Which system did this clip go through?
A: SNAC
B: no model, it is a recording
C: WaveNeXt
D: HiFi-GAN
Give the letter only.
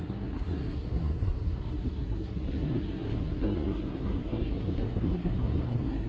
A